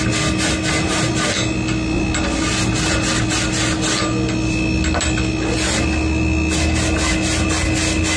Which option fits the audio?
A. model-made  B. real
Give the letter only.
B